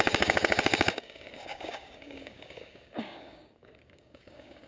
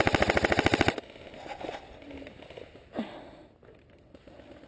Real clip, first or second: second